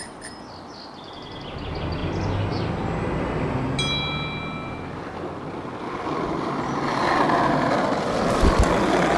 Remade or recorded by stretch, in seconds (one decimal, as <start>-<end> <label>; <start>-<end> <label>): 0.0-9.2 recorded